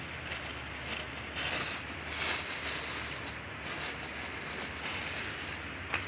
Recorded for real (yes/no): yes